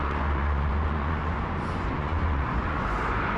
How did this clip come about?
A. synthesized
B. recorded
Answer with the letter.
A